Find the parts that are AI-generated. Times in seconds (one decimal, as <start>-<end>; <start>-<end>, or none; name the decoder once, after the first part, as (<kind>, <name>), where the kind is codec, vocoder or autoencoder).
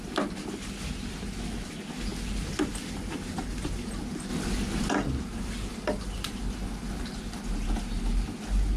none